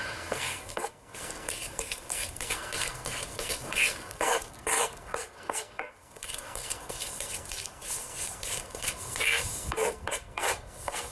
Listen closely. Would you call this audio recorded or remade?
remade